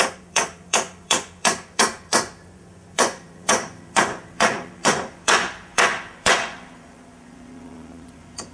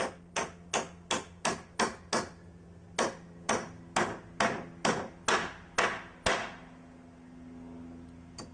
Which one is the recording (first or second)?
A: second